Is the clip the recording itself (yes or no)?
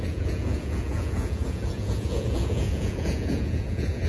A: no